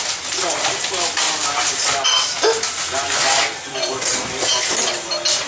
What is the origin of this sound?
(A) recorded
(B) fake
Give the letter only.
A